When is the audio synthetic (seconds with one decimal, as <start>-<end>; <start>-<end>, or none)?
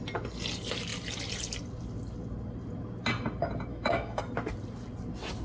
3.7-4.2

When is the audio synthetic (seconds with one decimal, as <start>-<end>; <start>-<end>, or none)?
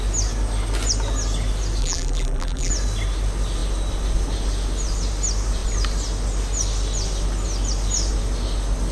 1.8-2.7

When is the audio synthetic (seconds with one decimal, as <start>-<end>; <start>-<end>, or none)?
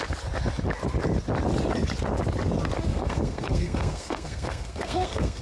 2.9-5.4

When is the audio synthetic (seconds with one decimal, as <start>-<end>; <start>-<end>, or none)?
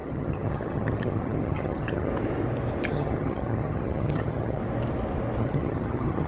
0.0-2.1; 2.9-4.6; 5.4-6.3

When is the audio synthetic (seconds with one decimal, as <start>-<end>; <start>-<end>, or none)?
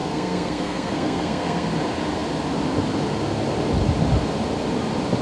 0.0-1.7